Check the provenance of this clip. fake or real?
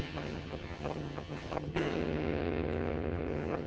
fake